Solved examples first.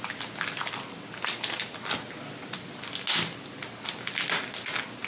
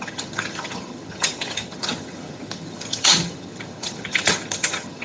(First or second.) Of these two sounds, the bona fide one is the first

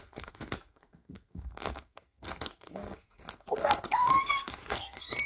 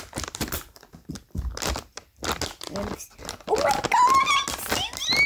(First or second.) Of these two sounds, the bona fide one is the second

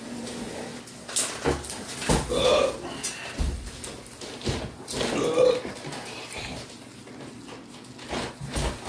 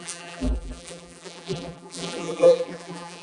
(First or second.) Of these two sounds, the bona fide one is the first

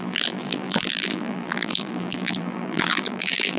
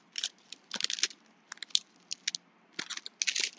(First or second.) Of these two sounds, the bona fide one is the second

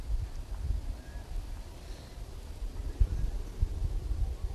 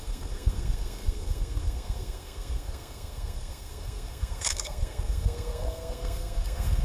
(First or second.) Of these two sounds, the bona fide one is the first